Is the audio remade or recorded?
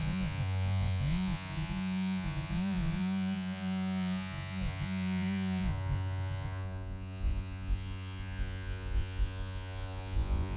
remade